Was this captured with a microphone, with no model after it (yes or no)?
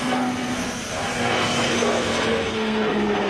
no